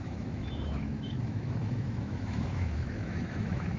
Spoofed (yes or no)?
yes